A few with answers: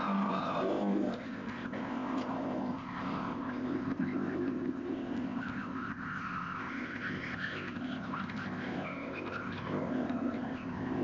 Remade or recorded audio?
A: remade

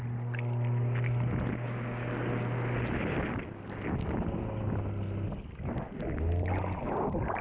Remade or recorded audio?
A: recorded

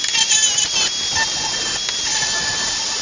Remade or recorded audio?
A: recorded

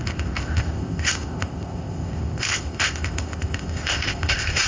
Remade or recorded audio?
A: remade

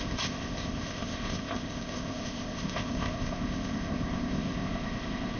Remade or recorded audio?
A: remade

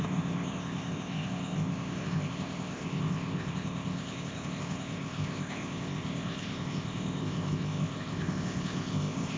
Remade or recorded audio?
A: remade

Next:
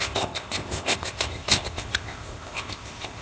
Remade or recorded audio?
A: remade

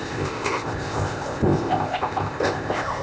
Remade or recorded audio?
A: remade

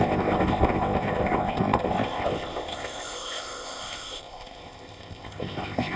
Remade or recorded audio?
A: remade